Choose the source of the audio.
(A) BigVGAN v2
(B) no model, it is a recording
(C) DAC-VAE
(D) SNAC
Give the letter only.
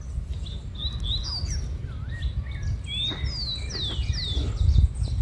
B